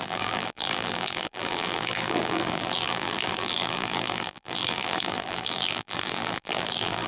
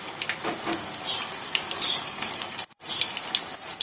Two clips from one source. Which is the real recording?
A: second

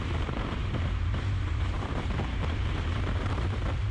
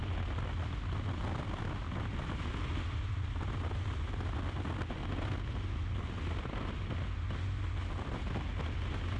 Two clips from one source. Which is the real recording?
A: second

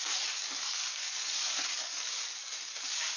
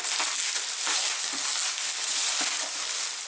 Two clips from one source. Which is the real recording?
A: second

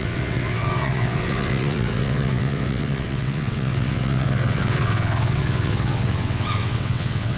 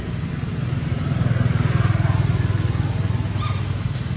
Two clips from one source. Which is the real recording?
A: second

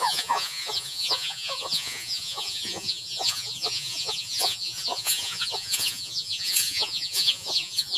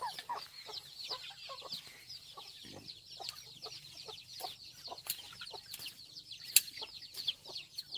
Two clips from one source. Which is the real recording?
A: second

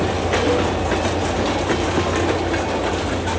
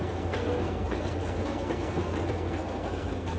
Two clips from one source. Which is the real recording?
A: first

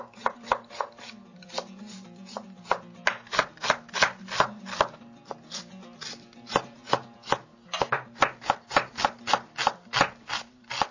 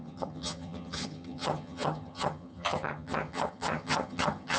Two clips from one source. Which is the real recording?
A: first